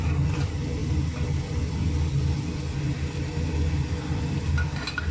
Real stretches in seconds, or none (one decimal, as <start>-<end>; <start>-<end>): 0.0-5.1